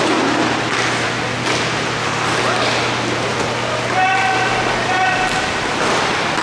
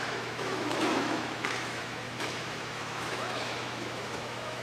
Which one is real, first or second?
first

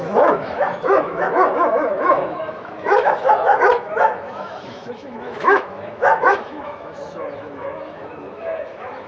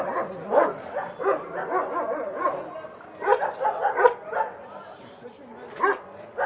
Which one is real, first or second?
second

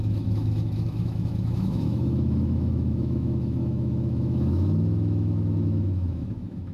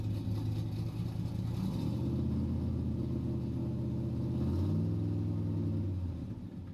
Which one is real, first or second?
second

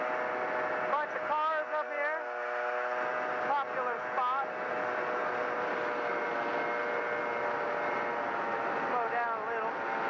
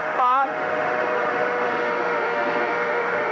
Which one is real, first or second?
first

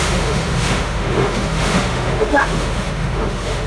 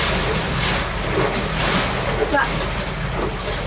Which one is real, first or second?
second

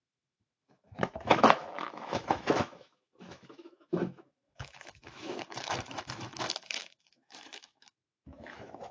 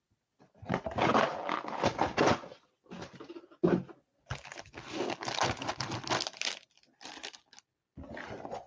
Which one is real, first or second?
second